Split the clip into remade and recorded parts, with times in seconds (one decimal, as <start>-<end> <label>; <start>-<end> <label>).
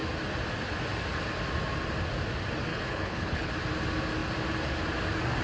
0.0-2.7 recorded; 2.7-3.5 remade; 3.5-5.4 recorded